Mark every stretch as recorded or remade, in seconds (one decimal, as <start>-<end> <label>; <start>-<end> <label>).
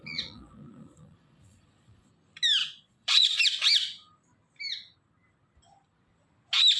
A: 0.0-2.1 remade; 2.1-2.6 recorded; 2.6-3.4 remade; 3.4-6.8 recorded